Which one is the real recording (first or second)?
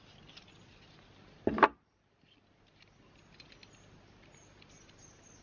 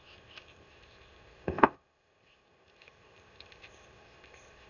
first